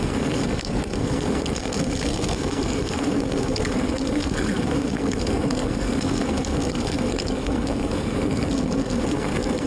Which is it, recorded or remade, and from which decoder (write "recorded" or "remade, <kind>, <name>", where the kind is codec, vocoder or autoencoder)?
remade, codec, SNAC